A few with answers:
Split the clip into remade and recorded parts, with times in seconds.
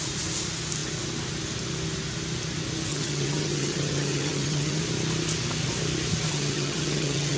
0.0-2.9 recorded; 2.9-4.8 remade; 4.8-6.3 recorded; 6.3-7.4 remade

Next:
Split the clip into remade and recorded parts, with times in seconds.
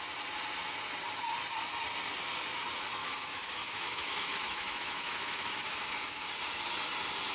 0.0-3.0 recorded; 3.0-6.3 remade; 6.3-7.3 recorded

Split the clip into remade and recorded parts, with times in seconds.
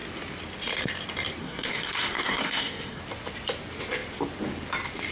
0.0-1.4 recorded; 1.4-3.0 remade; 3.0-5.1 recorded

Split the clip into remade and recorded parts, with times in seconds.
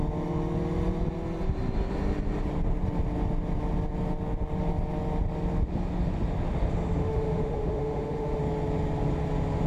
0.0-7.0 recorded; 7.0-8.4 remade; 8.4-9.7 recorded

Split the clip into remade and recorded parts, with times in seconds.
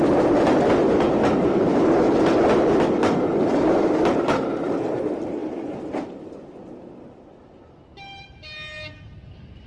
0.0-9.7 recorded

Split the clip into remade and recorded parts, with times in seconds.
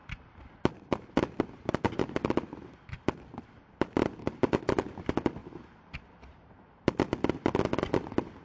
0.0-8.4 recorded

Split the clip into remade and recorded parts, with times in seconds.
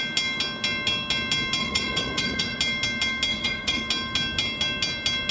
0.0-1.6 recorded; 1.6-2.6 remade; 2.6-3.3 recorded; 3.3-3.8 remade; 3.8-5.3 recorded